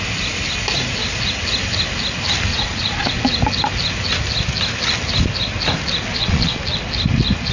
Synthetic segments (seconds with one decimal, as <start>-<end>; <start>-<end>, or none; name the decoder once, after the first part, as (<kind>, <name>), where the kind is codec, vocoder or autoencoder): 2.5-3.1 (vocoder, Vocos); 6.1-6.6